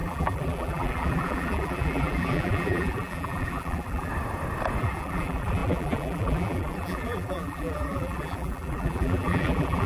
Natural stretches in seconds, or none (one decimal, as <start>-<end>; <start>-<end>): 4.1-4.8